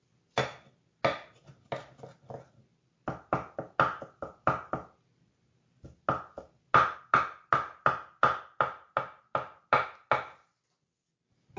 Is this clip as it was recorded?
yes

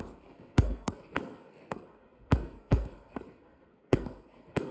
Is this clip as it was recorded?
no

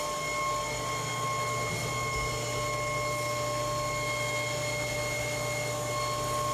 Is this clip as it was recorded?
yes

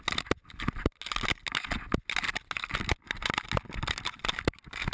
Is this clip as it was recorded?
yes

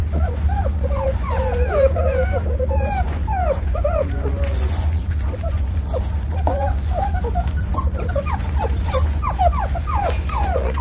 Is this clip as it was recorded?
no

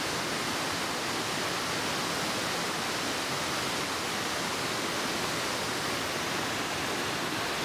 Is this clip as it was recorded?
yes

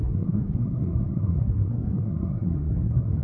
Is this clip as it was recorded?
no